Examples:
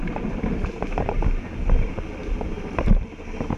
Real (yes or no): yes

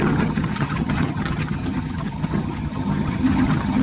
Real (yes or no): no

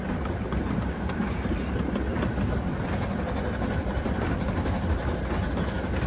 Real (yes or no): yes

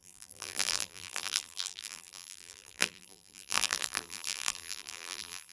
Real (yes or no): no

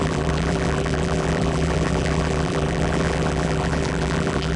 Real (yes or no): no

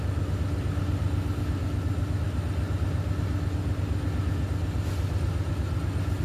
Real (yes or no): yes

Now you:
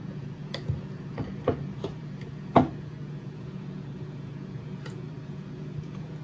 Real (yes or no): no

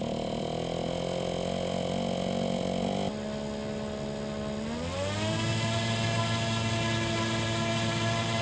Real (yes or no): yes